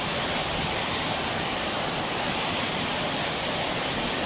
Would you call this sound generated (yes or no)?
yes